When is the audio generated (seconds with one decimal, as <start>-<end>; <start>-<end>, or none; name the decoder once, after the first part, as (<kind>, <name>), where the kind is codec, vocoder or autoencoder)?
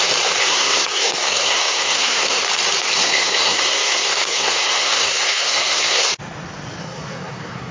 0.4-2.4 (codec, SNAC); 3.0-6.2; 6.8-7.7